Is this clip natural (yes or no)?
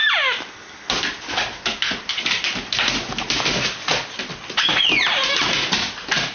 yes